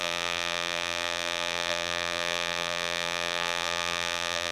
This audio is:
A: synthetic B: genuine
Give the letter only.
A